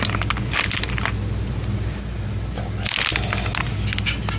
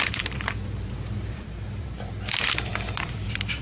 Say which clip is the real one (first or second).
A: first